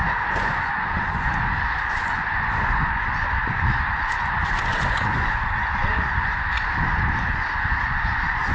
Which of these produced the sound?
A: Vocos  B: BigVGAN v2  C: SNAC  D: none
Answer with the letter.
A